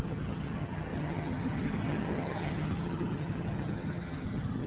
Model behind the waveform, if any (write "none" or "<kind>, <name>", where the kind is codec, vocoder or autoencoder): vocoder, HiFi-GAN